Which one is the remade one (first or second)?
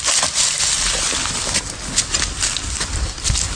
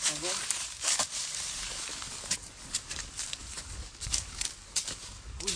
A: second